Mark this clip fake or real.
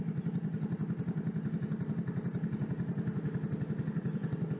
real